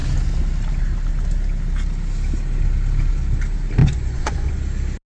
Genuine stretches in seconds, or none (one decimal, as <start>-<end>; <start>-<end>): 0.0-3.8; 4.6-5.1